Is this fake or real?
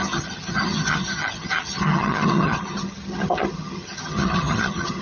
fake